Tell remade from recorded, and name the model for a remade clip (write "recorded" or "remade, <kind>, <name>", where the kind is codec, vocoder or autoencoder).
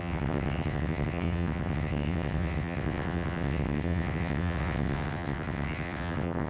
remade, vocoder, WaveNeXt